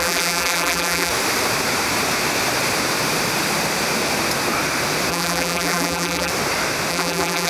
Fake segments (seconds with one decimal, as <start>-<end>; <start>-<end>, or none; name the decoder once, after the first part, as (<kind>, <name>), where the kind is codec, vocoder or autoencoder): 0.0-1.1 (vocoder, BigVGAN v2); 5.1-6.3; 6.9-7.5